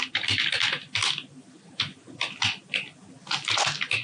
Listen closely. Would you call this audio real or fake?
real